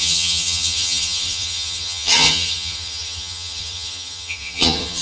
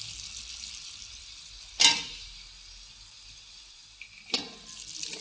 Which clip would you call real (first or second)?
second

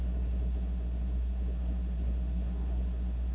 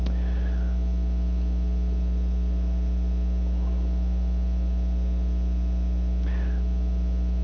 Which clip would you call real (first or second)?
second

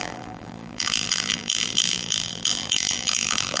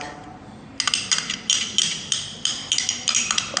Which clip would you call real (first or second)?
second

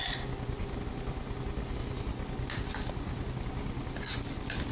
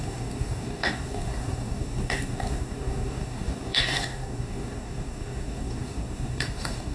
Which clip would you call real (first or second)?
first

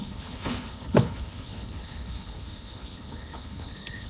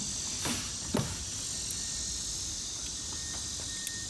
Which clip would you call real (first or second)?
second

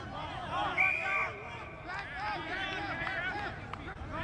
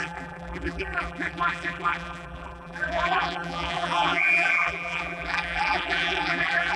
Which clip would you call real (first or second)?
first